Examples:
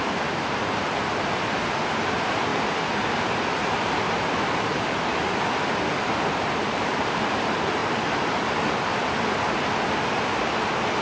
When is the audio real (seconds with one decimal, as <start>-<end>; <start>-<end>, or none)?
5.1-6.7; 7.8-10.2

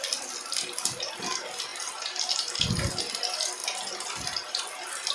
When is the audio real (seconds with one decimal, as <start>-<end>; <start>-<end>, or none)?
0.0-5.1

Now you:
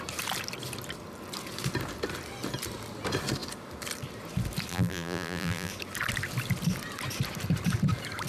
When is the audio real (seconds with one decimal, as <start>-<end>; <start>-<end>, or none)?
0.0-4.7; 5.7-8.3

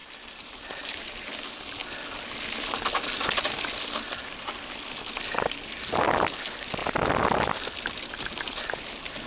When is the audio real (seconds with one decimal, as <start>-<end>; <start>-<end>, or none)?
1.2-9.3